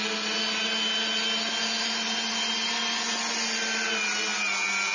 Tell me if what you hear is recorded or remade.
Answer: recorded